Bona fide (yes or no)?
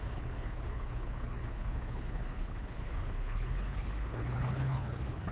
no